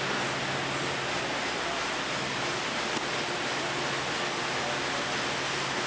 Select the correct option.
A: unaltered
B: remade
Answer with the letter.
A